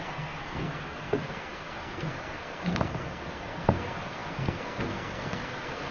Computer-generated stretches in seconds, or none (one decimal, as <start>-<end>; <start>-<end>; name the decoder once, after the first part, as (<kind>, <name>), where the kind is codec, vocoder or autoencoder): 0.0-5.9 (codec, SNAC)